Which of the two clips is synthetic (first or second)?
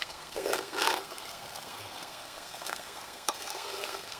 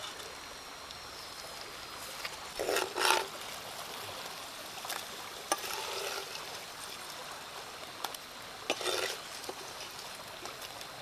first